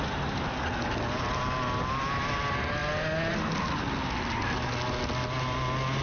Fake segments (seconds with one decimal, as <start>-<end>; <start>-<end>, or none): none